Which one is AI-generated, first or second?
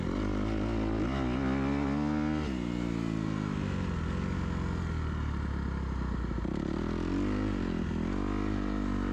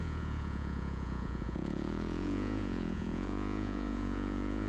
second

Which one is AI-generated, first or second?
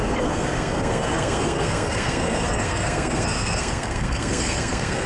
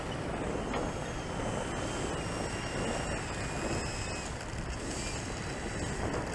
first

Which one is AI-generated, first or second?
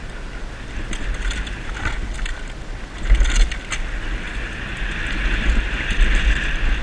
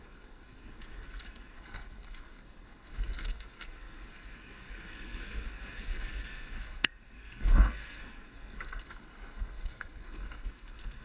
second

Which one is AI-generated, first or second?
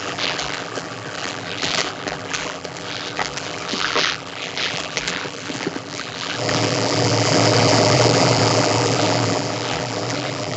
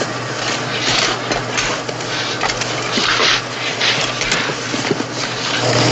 first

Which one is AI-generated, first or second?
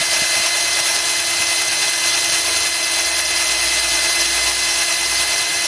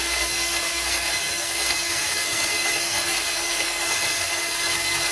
second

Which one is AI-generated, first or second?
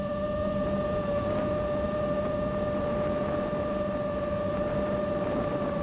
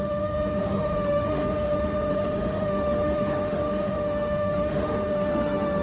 second